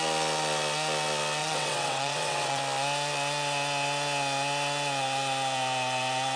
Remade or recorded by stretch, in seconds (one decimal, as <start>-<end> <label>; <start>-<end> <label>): 0.0-1.4 recorded; 1.4-2.6 remade; 2.6-6.4 recorded